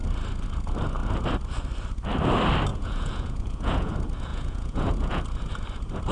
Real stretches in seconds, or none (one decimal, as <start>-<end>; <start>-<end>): 0.0-2.7; 3.9-4.3; 5.2-6.1